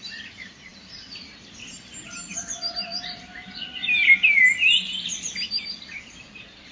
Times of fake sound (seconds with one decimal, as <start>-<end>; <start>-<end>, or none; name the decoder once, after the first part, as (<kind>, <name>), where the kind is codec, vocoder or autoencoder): none